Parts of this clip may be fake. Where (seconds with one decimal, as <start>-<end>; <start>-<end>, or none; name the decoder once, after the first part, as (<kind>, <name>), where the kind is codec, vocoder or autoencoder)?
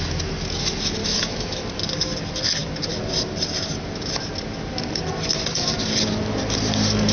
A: 1.0-1.6 (autoencoder, DAC-VAE)